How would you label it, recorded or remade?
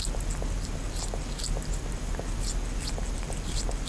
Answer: recorded